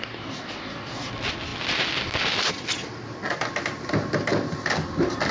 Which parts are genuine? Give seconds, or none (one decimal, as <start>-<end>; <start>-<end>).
1.1-5.3